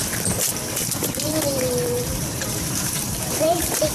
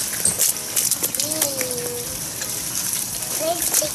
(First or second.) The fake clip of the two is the first